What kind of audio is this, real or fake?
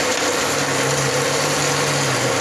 real